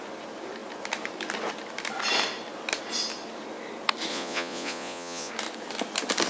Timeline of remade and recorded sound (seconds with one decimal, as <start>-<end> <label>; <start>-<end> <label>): 0.0-4.1 recorded; 4.1-5.3 remade; 5.3-6.3 recorded